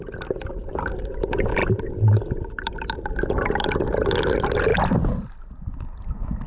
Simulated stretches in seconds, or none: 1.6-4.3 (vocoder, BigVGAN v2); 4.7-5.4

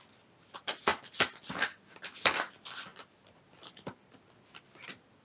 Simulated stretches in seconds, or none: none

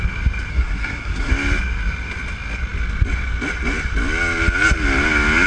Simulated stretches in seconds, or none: 0.5-1.3 (codec, SNAC)

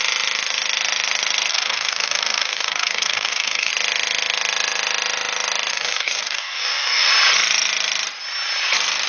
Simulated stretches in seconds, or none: 1.5-3.7 (codec, DAC); 5.7-7.1